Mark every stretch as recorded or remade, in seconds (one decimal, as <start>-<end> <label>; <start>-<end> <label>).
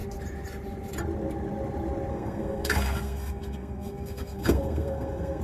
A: 0.0-2.1 recorded; 2.1-5.4 remade